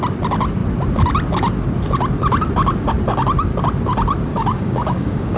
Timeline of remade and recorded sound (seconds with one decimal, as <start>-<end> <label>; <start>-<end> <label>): 0.0-4.3 recorded; 4.3-5.4 remade